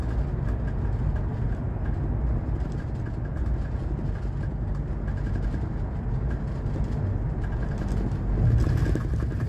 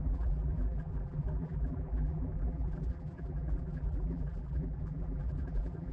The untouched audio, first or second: first